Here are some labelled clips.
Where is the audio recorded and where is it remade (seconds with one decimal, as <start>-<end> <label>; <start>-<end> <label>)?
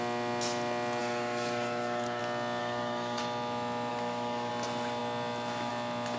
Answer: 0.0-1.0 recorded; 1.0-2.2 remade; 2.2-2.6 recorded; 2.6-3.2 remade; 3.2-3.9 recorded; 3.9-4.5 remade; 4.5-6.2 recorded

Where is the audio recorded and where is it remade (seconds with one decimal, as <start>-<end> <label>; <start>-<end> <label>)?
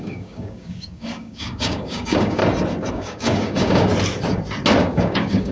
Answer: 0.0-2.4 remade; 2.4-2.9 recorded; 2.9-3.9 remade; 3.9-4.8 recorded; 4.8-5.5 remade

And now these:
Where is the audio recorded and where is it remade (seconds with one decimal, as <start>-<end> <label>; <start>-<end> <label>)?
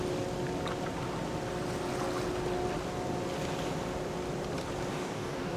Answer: 0.0-4.9 recorded; 4.9-5.6 remade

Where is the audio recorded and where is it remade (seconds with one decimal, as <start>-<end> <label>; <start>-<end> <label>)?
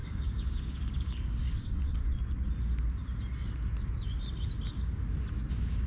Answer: 0.0-2.0 remade; 2.0-5.5 recorded; 5.5-5.9 remade